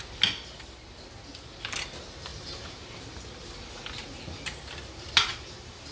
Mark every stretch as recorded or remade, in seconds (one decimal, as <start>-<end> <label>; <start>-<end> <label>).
0.0-2.3 recorded; 2.3-2.8 remade; 2.8-5.9 recorded